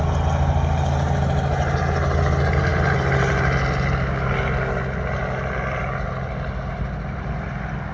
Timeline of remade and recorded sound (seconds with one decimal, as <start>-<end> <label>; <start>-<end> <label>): 0.0-7.9 recorded